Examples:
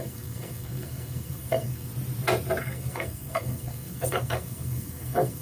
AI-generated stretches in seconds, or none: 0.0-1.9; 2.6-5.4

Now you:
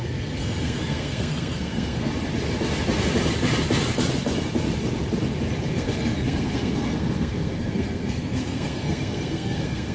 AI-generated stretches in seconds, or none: 0.0-2.1; 5.7-9.9

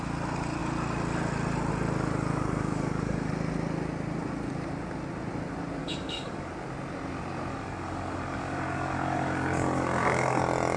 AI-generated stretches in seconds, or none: 2.3-3.3; 5.8-6.5; 7.5-10.4

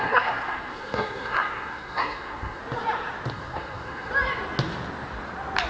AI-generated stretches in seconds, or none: 0.0-2.6; 3.3-4.1

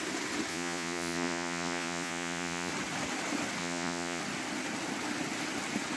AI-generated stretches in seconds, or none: 0.5-2.7; 3.6-4.2